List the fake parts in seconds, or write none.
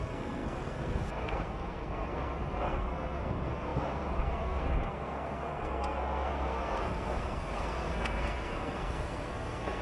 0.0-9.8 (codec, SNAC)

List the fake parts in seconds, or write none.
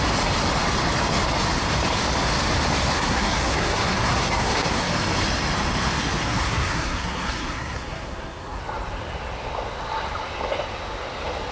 2.9-4.9 (codec, SNAC); 6.2-8.6